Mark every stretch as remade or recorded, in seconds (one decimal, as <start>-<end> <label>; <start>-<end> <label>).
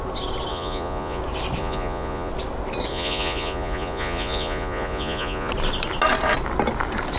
0.0-0.5 recorded; 0.5-1.2 remade; 1.2-1.6 recorded; 1.6-2.3 remade; 2.3-2.9 recorded; 2.9-5.5 remade; 5.5-7.2 recorded